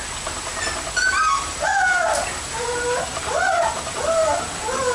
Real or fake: real